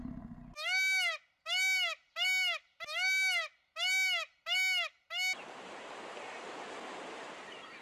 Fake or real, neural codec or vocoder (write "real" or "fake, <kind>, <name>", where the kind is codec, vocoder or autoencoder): real